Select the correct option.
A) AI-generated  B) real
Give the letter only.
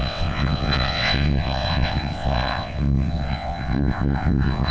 A